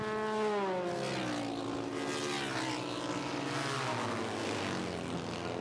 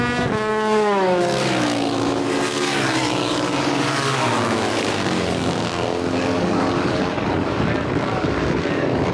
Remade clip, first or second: second